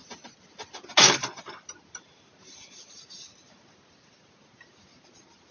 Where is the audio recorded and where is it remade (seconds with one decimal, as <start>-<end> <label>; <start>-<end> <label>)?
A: 0.0-5.5 recorded